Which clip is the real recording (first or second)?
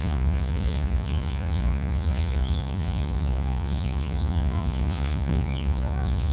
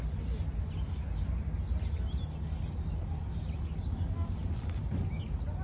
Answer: second